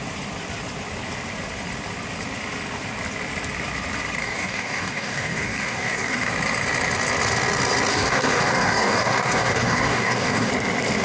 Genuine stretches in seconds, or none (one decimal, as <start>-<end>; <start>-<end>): 0.0-4.2; 6.3-7.9; 10.5-11.0